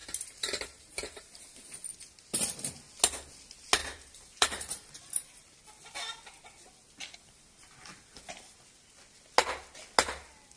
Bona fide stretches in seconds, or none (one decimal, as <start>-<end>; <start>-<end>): 1.7-3.8; 5.6-10.6